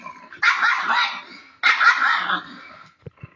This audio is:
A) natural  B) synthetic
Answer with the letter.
A